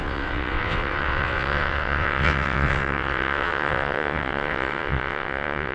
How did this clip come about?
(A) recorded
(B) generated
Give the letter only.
B